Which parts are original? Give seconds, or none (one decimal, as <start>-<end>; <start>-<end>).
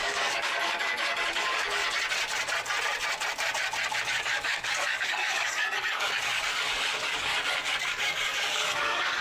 1.8-4.0; 7.3-7.9